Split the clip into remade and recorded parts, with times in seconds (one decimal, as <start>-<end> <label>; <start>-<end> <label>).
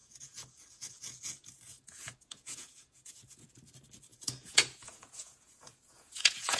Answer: 0.0-3.5 remade; 3.5-4.1 recorded; 4.1-6.6 remade